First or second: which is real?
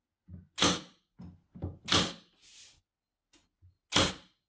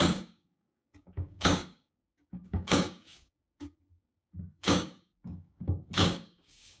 first